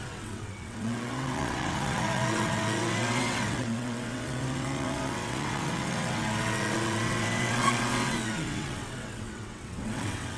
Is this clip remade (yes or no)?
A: yes